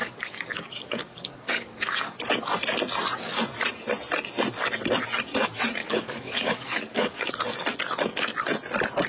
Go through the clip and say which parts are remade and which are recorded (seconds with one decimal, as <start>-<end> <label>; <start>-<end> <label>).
0.0-2.1 remade; 2.1-5.8 recorded; 5.8-7.3 remade; 7.3-9.1 recorded